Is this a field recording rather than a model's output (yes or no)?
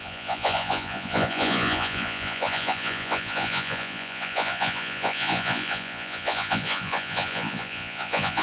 no